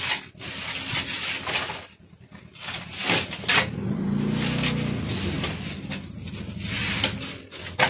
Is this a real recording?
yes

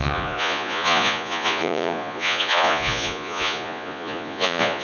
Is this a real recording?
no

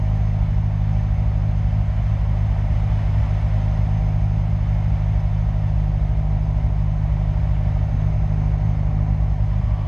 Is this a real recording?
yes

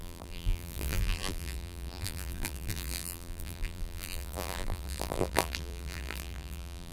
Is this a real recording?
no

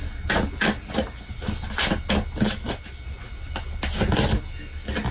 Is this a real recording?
yes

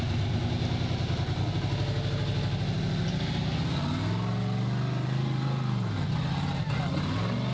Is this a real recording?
yes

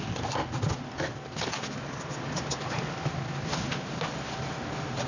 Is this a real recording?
yes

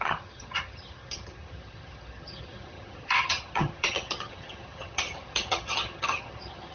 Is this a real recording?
no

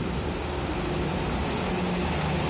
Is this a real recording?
yes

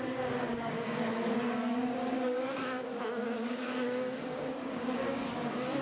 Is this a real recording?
no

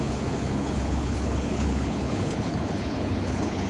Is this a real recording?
no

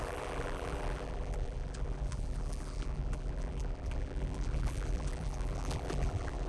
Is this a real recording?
no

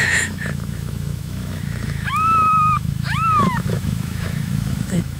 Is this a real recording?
no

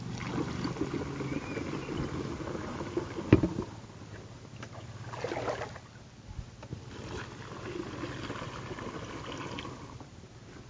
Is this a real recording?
yes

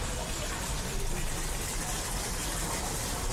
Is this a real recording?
yes